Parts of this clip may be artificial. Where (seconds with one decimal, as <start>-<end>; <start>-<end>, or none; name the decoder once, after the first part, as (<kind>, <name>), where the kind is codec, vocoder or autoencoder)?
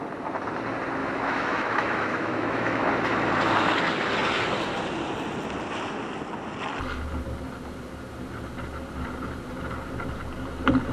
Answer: 1.0-2.9 (autoencoder, DAC-VAE)